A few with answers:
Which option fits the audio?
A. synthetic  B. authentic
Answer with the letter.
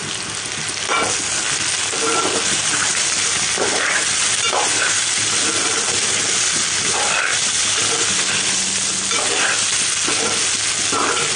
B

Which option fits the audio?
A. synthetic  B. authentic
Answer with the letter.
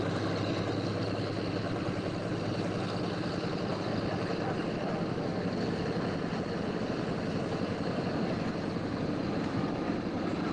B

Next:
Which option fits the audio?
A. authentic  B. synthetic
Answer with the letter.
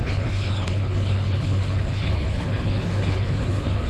B